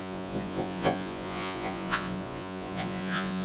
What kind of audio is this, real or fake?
fake